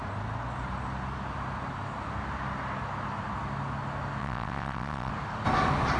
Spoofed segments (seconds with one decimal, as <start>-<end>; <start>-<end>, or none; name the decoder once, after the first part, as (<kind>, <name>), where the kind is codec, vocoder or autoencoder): 4.2-5.1 (vocoder, WaveNeXt)